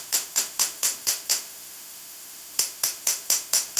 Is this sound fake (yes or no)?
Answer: yes